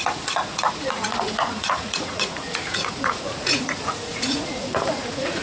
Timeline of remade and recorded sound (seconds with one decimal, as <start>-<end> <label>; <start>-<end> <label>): 0.0-5.4 remade